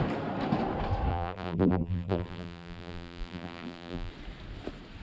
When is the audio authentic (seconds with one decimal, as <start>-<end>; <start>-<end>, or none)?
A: 0.0-1.1; 4.1-5.0